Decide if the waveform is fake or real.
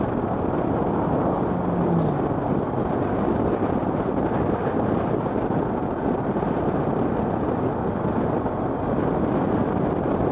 real